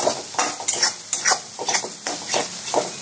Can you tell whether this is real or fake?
real